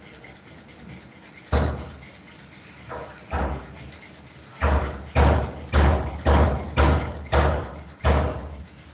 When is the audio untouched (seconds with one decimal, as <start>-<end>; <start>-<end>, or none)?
0.0-8.9